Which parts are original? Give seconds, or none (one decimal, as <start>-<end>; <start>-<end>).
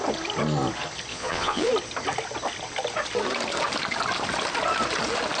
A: 0.0-1.1; 1.7-5.4